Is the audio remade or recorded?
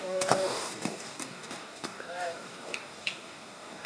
remade